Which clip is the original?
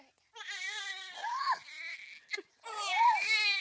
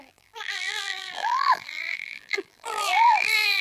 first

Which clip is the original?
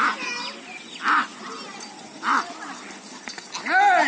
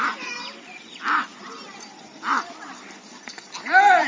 first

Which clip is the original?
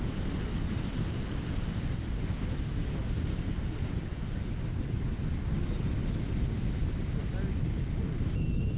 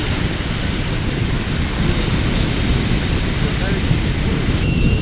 first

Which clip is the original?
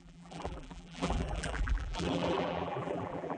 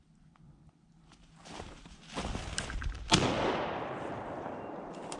second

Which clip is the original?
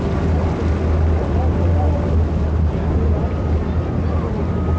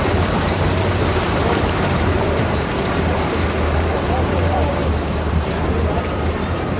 first